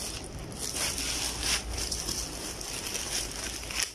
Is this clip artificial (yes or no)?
no